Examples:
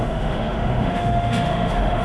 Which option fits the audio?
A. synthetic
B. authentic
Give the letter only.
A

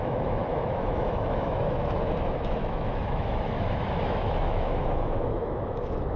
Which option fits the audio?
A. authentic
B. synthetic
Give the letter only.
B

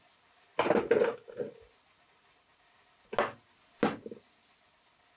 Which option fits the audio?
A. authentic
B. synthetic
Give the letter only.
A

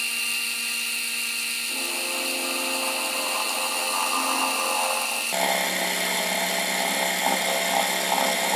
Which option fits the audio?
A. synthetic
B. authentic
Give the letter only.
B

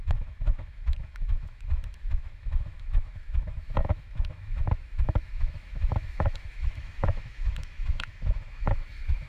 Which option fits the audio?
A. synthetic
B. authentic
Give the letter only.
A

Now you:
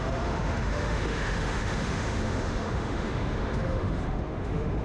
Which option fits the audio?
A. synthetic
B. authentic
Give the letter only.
A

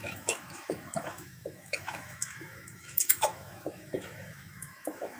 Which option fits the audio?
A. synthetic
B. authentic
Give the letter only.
A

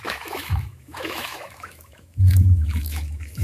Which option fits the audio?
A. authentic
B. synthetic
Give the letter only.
B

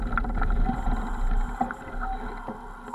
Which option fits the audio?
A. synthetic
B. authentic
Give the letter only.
B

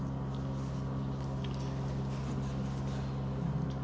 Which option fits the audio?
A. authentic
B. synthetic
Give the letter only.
A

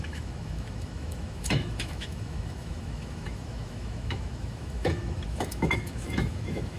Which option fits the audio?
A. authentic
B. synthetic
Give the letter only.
B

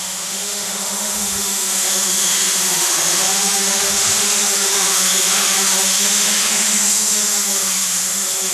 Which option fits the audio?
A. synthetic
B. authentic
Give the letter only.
A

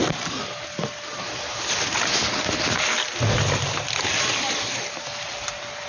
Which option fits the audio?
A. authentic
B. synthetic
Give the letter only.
A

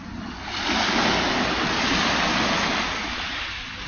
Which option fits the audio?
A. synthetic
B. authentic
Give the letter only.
B